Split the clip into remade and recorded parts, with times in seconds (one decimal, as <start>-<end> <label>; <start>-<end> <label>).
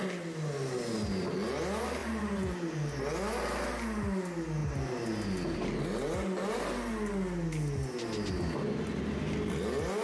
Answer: 0.0-2.0 recorded; 2.0-3.0 remade; 3.0-10.0 recorded